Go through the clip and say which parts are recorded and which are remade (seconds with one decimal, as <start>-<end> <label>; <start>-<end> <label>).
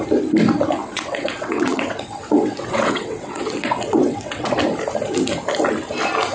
0.0-0.8 recorded; 0.8-4.6 remade; 4.6-6.3 recorded